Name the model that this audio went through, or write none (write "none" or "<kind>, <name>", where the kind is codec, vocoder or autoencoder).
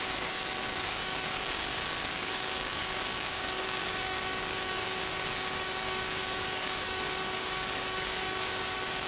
codec, DAC